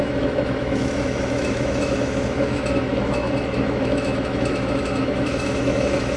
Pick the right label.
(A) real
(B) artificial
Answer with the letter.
B